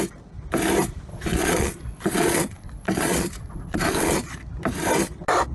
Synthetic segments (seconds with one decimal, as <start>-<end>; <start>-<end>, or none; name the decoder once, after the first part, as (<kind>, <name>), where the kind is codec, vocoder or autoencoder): 1.1-4.4 (vocoder, Vocos)